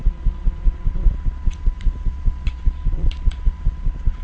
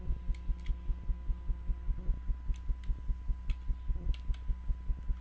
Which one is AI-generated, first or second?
first